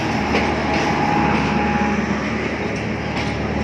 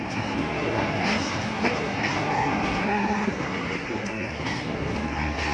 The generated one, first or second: second